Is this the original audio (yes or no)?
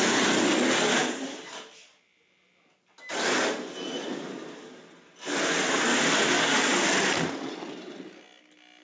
yes